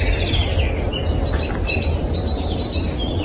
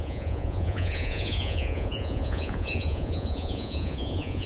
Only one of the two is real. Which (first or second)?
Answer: first